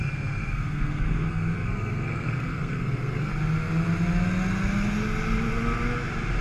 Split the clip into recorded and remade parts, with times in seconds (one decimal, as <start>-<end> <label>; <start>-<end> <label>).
0.0-3.3 remade; 3.3-6.4 recorded